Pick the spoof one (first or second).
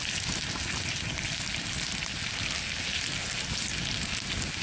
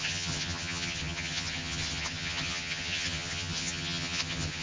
second